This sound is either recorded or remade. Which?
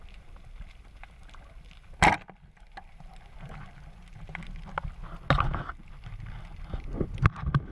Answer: recorded